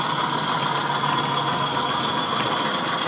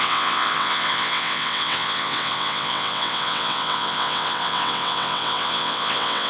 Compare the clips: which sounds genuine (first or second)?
first